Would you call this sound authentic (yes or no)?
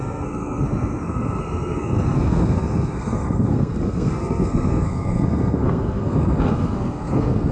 no